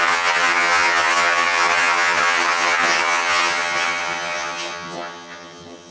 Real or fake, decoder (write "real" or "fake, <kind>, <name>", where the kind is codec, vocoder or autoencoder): fake, vocoder, HiFi-GAN